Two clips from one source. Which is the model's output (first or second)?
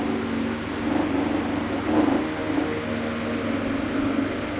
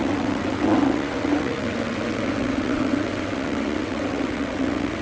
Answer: second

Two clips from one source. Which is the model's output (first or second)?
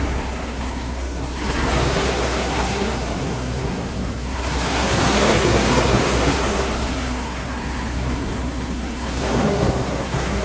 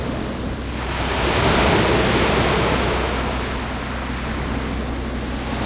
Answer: first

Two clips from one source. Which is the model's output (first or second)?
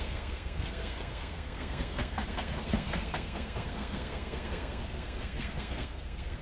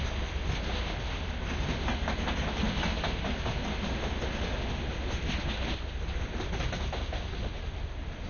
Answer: first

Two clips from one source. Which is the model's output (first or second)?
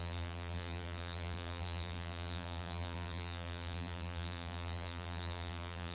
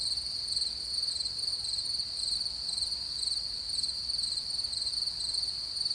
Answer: first